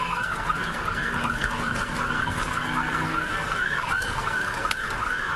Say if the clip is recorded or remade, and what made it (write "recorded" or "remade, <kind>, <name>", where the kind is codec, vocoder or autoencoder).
remade, codec, SNAC